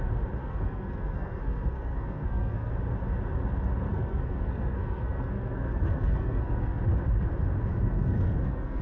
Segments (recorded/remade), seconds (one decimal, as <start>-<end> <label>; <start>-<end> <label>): 0.0-0.4 recorded; 0.4-2.7 remade; 2.7-3.9 recorded; 3.9-6.8 remade; 6.8-7.7 recorded; 7.7-8.8 remade